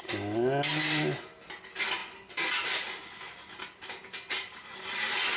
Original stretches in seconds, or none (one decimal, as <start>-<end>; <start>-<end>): 0.0-5.4